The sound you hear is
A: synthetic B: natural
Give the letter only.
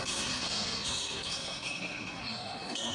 A